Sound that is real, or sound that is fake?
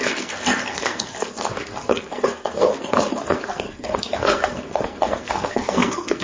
fake